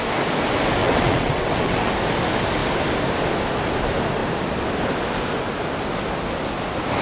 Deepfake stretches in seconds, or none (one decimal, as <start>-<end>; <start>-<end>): 0.8-1.9